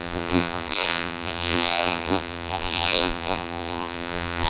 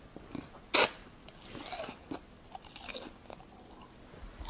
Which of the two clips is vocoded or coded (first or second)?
first